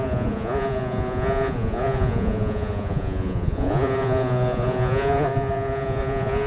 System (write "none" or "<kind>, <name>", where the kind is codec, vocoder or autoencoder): vocoder, Vocos